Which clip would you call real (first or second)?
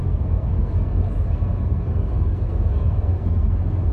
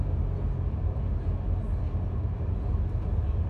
second